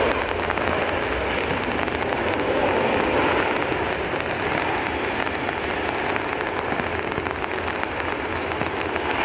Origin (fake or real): real